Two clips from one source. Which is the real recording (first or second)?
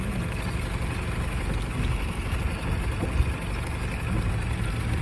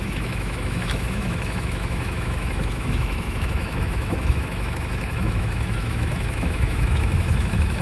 first